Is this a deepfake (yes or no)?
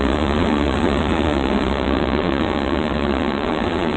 yes